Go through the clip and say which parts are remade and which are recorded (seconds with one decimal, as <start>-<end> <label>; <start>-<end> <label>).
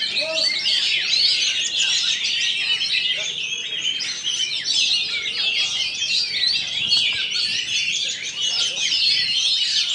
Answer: 0.0-7.5 recorded; 7.5-8.3 remade; 8.3-9.9 recorded